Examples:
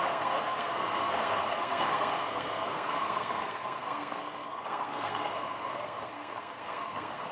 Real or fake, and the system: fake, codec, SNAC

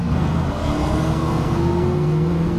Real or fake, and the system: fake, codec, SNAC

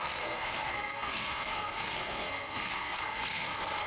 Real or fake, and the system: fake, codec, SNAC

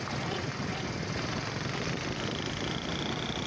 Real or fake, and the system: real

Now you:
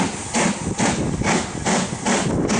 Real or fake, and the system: real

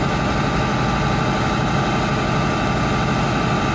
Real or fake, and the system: real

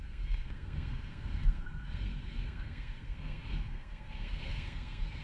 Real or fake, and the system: fake, codec, SNAC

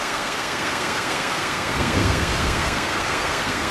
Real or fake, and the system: fake, codec, SNAC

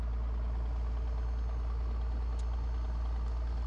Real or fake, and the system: real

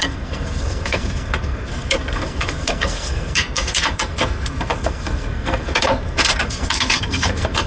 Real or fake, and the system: fake, codec, SNAC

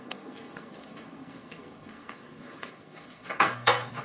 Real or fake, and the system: fake, codec, SNAC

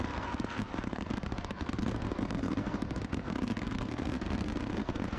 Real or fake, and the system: fake, codec, SNAC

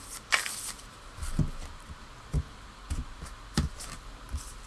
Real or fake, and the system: real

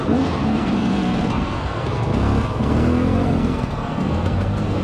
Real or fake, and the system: fake, codec, SNAC